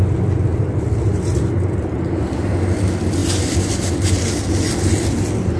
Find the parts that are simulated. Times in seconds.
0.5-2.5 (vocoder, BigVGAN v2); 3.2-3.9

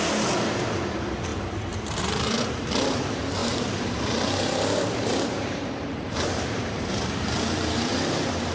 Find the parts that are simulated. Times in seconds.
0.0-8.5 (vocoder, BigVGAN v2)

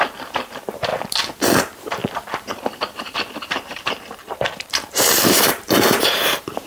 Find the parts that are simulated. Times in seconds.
0.0-0.9 (vocoder, BigVGAN v2); 1.6-2.0; 2.7-6.7

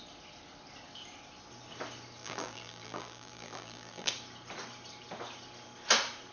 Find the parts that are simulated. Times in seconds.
2.2-4.1 (vocoder, BigVGAN v2)